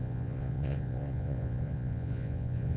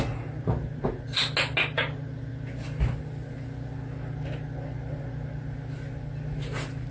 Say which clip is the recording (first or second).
second